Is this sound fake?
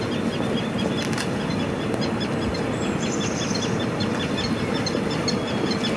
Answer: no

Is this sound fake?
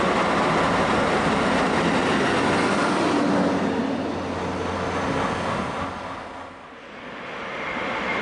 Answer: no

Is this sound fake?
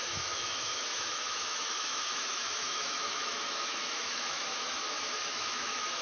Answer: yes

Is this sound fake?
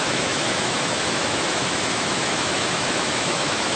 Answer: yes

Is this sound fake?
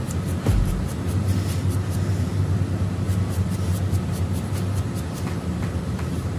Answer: no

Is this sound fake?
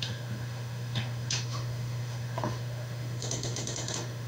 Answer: yes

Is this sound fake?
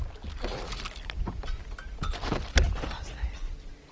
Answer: no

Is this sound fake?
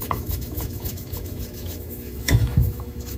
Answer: yes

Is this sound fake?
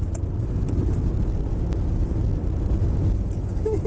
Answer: no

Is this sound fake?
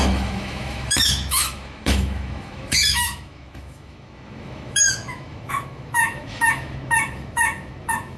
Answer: yes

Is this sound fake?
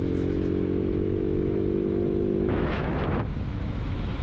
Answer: yes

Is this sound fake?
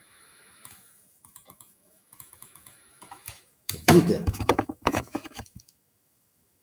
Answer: yes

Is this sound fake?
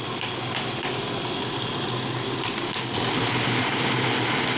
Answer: no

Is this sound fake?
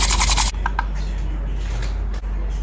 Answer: no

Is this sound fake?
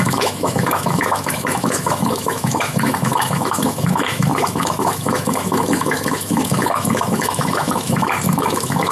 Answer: yes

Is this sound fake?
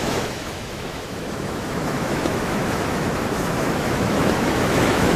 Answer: yes